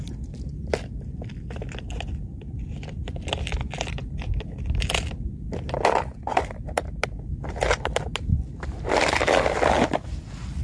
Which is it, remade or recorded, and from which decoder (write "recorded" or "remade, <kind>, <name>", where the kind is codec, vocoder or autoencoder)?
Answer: recorded